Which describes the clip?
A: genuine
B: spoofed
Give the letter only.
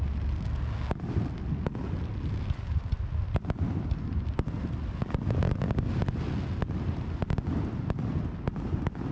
A